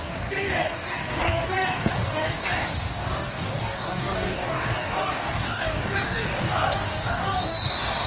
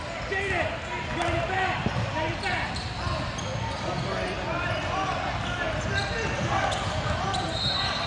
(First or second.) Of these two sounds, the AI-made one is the first